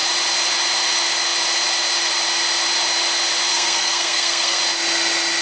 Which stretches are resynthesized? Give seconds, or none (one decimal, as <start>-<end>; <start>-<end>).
3.5-4.6